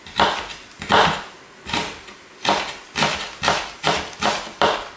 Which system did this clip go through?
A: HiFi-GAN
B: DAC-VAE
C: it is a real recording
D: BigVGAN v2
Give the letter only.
D